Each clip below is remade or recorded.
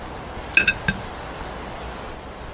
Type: recorded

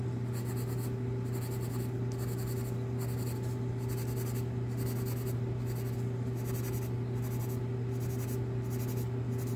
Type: recorded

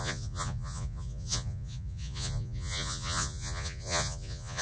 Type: remade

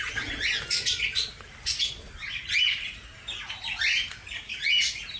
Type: recorded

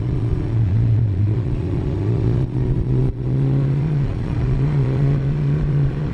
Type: remade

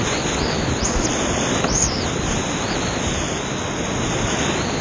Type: recorded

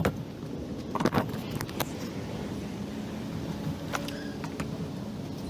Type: recorded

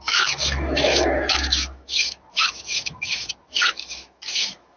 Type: remade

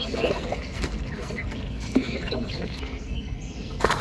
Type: remade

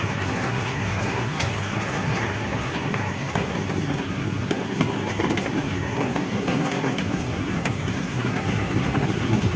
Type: remade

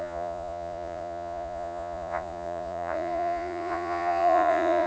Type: remade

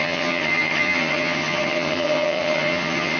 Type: remade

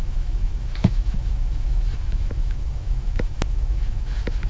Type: remade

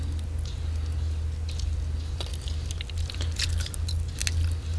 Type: recorded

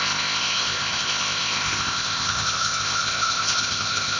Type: remade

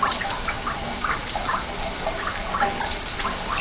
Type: recorded